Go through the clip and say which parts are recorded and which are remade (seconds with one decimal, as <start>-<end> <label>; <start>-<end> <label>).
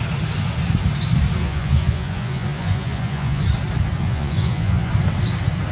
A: 0.0-1.4 recorded; 1.4-3.4 remade; 3.4-4.0 recorded; 4.0-4.9 remade; 4.9-5.7 recorded